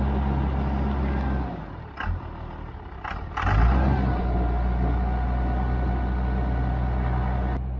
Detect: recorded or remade recorded